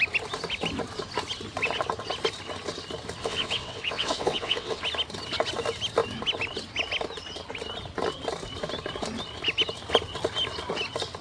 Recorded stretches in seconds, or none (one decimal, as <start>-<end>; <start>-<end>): 0.0-3.2; 4.8-11.2